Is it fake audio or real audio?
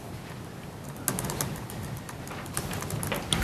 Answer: real